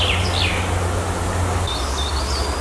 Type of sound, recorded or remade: recorded